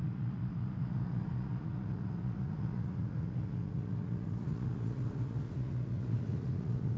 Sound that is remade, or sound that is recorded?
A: remade